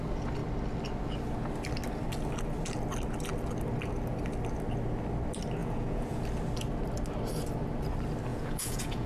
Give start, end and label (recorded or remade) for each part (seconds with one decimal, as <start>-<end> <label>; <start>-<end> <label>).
0.0-5.6 recorded; 5.6-6.2 remade; 6.2-8.3 recorded; 8.3-9.1 remade